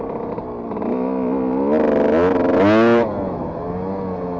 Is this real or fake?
real